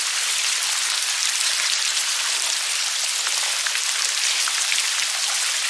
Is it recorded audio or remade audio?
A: recorded